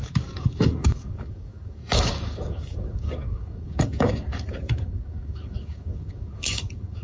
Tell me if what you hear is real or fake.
fake